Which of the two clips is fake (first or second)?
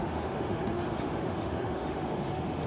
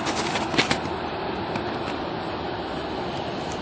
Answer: first